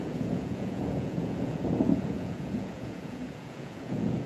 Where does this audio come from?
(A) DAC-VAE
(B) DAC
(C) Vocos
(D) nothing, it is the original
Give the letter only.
C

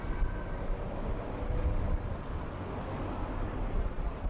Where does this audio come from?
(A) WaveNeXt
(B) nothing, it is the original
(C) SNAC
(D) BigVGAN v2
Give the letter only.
B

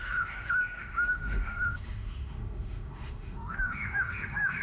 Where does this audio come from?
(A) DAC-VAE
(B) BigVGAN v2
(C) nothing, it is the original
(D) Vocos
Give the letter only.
A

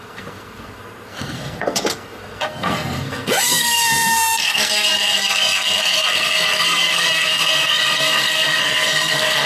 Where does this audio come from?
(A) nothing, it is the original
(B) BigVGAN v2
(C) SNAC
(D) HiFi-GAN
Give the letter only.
C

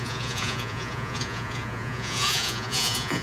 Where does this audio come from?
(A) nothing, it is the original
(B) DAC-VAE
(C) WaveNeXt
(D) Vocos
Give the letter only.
D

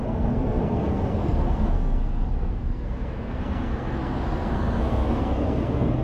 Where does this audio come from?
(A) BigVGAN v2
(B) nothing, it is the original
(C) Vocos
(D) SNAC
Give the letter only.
D